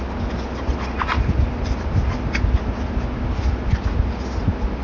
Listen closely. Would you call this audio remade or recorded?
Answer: recorded